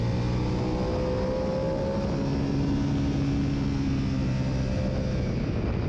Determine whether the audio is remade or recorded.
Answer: recorded